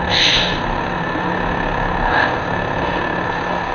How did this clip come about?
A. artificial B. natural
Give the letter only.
A